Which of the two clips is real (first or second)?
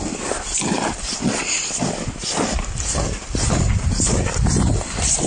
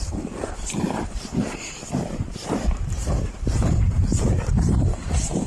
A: first